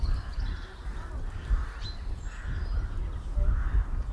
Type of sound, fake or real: real